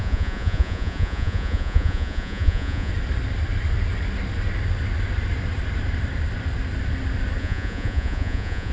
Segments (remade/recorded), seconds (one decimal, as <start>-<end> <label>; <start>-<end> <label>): 0.0-2.9 remade; 2.9-7.4 recorded; 7.4-8.7 remade

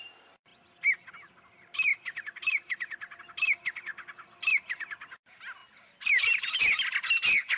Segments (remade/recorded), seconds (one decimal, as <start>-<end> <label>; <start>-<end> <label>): 0.0-0.5 recorded; 0.5-1.1 remade; 1.1-1.9 recorded; 1.9-3.2 remade; 3.2-7.6 recorded

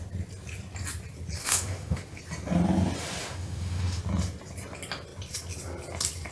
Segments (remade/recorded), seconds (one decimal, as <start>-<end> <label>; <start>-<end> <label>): 0.0-1.4 recorded; 1.4-2.2 remade; 2.2-3.2 recorded; 3.2-4.0 remade; 4.0-6.3 recorded